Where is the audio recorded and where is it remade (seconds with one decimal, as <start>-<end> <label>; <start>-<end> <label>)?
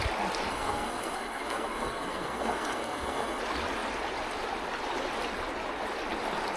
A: 0.0-0.5 recorded; 0.5-3.4 remade; 3.4-6.6 recorded